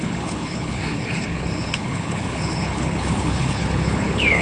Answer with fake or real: fake